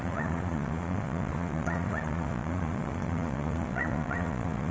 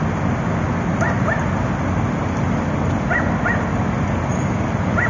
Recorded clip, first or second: second